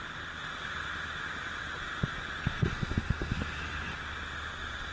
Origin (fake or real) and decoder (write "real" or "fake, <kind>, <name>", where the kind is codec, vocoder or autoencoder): real